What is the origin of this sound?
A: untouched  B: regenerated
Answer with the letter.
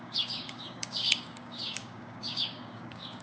B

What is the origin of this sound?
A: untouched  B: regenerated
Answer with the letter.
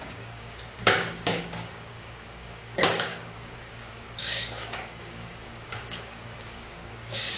B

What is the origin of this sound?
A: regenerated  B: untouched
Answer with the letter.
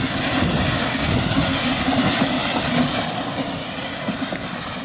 B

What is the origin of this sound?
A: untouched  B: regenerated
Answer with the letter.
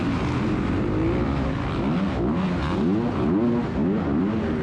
A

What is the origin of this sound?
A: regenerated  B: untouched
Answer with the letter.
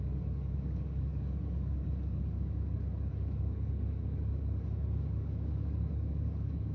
A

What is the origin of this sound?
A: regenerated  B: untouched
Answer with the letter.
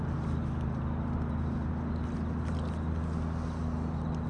B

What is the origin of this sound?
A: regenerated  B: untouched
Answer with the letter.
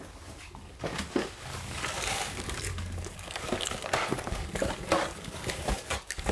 A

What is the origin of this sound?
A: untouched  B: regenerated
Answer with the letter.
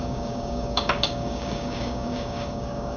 B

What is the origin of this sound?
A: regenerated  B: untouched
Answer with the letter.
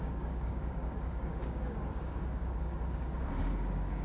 A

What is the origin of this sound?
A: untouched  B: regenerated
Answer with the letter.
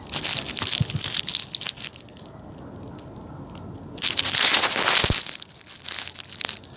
A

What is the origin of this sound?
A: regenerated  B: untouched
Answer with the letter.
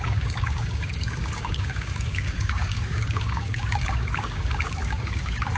A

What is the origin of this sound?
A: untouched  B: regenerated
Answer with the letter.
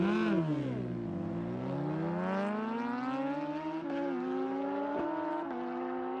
A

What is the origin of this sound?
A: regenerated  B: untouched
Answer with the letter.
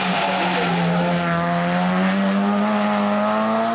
B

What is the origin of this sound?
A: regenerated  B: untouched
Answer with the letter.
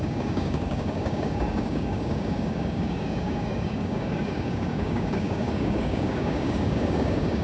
A